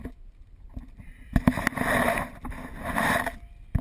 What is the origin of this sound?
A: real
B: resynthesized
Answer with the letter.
A